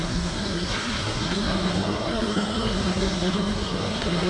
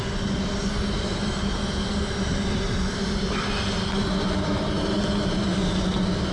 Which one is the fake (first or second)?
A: first